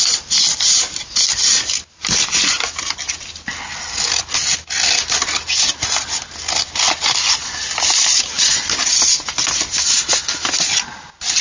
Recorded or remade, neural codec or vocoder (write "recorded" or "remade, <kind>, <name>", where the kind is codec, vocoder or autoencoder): recorded